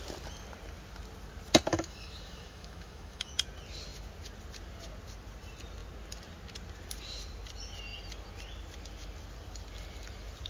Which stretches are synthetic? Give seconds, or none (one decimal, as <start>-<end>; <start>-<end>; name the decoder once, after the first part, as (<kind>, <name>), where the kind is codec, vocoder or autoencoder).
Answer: 1.7-3.3 (autoencoder, DAC-VAE)